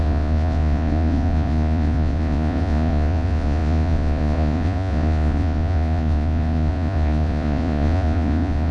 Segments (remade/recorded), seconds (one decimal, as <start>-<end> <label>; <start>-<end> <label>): 0.0-8.7 remade